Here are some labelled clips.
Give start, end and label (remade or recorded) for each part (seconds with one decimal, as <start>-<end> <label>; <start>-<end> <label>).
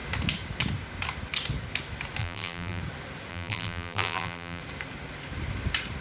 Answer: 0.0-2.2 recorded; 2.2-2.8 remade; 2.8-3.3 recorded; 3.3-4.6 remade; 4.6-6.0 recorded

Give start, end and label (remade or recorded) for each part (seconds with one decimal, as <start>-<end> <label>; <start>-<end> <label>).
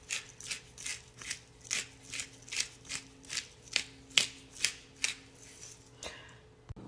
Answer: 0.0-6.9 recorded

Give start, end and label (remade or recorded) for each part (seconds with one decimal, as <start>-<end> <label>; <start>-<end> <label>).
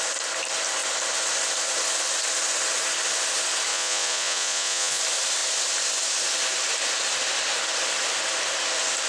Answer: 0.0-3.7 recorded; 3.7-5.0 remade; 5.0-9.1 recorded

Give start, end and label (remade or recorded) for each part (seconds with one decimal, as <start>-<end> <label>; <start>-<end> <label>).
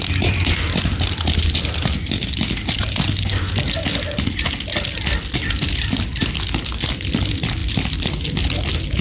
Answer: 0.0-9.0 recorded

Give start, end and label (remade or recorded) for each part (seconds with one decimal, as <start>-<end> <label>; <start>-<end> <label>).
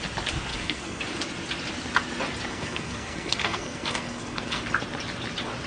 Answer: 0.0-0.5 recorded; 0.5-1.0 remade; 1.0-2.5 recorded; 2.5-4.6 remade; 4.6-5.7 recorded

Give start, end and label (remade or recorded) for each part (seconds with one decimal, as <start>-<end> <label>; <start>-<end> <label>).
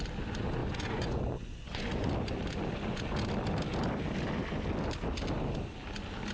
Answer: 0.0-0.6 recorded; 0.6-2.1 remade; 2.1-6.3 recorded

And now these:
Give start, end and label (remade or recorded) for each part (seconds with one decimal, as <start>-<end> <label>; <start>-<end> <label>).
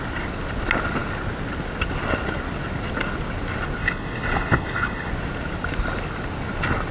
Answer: 0.0-3.8 recorded; 3.8-5.1 remade; 5.1-6.9 recorded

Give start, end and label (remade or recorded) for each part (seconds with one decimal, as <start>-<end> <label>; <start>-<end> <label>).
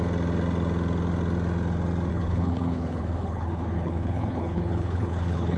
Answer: 0.0-2.1 recorded; 2.1-5.6 remade